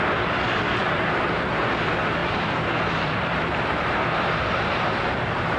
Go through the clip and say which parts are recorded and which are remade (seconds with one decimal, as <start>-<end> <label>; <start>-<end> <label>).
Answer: 0.0-0.8 recorded; 0.8-1.5 remade; 1.5-2.2 recorded; 2.2-5.6 remade